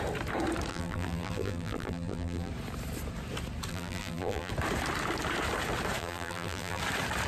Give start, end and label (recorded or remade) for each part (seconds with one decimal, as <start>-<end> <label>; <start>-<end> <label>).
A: 0.0-0.7 recorded; 0.7-2.5 remade; 2.5-3.7 recorded; 3.7-4.5 remade; 4.5-6.0 recorded; 6.0-6.8 remade; 6.8-7.3 recorded